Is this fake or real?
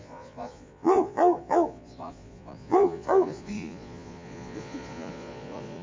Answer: fake